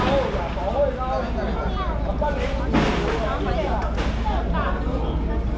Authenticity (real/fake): real